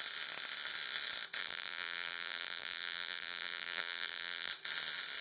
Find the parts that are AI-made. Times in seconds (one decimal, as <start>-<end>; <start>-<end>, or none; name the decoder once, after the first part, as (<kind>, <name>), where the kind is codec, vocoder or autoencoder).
1.4-4.5 (vocoder, BigVGAN v2)